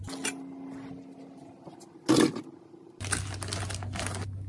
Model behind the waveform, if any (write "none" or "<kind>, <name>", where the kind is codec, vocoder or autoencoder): none